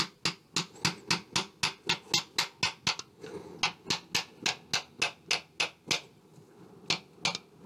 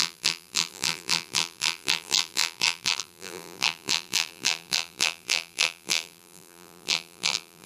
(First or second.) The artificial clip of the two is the second